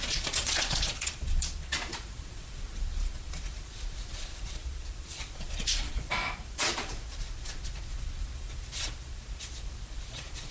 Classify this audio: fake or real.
fake